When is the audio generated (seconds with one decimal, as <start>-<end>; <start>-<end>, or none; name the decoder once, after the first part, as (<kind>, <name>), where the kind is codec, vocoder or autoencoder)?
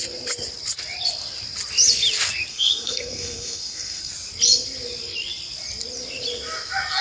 2.5-4.1 (codec, SNAC)